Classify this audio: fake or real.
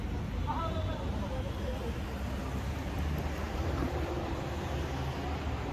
real